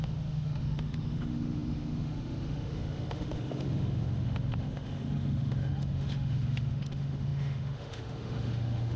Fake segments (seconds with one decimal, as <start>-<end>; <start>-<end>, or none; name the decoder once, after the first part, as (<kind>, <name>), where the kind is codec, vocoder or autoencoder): 0.0-9.0 (autoencoder, DAC-VAE)